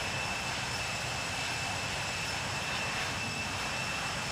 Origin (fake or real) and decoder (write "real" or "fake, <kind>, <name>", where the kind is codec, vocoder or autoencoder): real